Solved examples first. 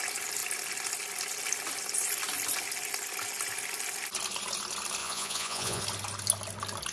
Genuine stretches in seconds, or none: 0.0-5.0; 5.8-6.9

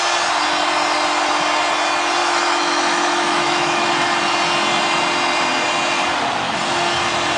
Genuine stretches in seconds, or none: 0.0-2.2; 3.9-7.4

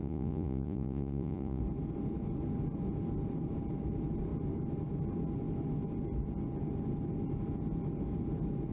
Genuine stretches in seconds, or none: 1.6-8.7

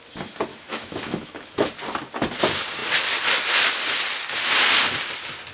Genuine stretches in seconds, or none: 0.0-0.5; 1.7-5.5